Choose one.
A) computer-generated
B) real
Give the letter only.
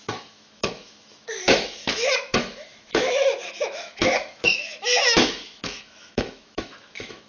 A